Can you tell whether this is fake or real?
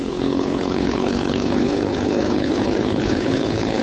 fake